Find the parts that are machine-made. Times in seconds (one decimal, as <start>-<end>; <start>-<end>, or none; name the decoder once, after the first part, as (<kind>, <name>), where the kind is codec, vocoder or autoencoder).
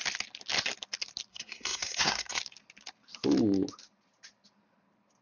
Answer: 1.3-2.4 (codec, SNAC)